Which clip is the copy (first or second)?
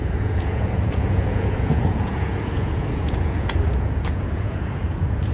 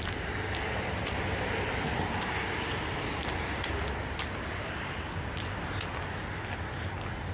first